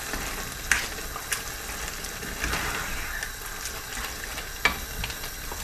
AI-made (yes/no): no